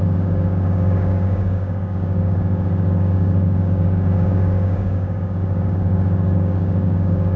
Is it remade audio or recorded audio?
remade